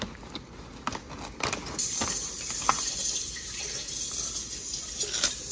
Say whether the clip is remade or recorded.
recorded